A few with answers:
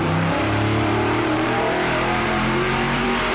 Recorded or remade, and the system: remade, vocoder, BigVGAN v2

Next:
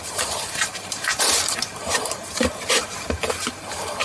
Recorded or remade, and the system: remade, vocoder, BigVGAN v2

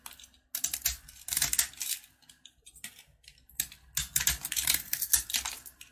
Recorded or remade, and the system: recorded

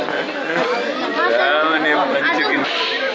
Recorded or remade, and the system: recorded